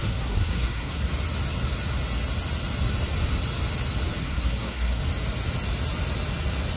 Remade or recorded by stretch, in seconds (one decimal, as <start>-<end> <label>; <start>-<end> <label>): 0.0-1.1 remade; 1.1-4.2 recorded; 4.2-5.0 remade; 5.0-6.8 recorded